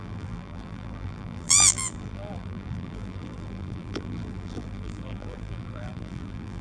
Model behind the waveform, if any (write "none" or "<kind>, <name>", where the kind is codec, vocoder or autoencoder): vocoder, BigVGAN v2